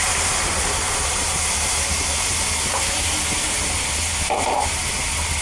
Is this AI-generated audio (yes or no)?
yes